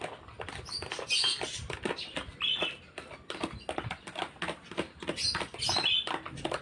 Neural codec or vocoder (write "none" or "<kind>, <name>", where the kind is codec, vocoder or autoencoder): none